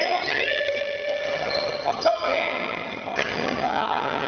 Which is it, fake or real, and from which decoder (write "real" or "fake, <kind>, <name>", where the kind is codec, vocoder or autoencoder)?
fake, vocoder, HiFi-GAN